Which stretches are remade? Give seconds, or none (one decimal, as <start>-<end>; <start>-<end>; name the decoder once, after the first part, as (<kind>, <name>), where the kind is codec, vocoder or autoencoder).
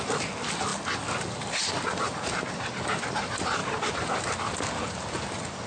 none